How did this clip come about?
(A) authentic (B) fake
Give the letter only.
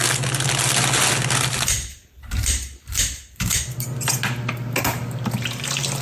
A